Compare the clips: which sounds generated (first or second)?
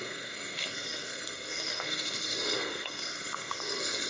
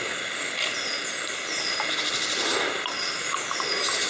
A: first